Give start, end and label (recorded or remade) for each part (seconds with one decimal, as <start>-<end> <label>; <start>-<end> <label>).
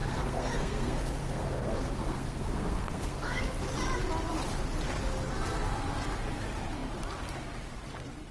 0.0-3.4 remade; 3.4-8.3 recorded